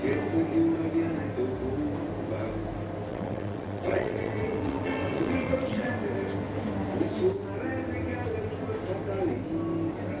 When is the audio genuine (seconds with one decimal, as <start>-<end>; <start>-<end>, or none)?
0.0-3.1; 5.9-10.2